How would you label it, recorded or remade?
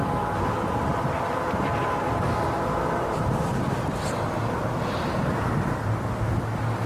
recorded